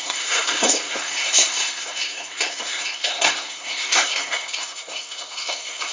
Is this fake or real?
fake